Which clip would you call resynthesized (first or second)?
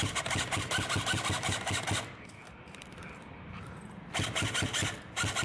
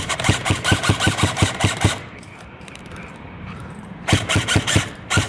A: second